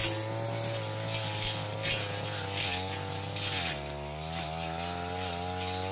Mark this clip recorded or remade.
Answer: recorded